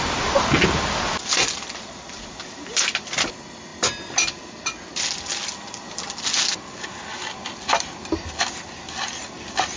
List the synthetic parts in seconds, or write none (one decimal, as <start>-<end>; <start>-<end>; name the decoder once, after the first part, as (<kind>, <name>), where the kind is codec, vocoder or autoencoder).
none